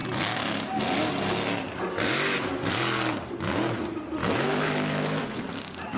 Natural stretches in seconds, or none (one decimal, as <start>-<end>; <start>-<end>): 0.0-4.2; 5.4-6.0